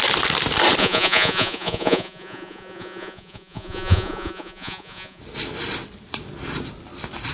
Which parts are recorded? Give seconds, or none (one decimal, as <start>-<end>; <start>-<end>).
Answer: 0.0-0.8; 5.2-7.3